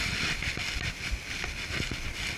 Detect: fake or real real